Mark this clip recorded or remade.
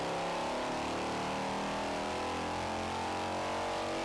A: recorded